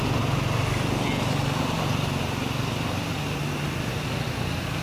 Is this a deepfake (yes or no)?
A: no